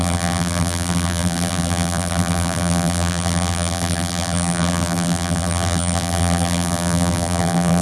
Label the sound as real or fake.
fake